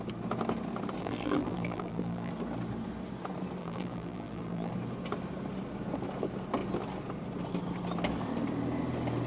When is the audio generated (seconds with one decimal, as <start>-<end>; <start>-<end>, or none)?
1.0-2.3; 3.6-4.7